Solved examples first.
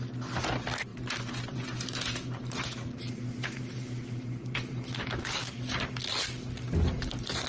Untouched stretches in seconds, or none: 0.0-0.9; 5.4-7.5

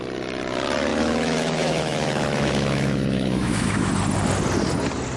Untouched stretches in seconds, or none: 0.0-0.9; 3.9-5.2

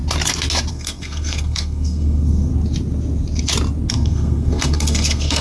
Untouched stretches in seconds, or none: 0.0-0.7; 2.5-3.9

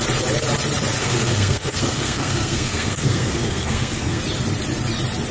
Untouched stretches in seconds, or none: 0.0-1.0; 4.2-5.3

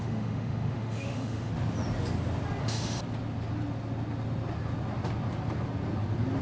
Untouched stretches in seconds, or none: 1.5-2.6; 3.0-6.4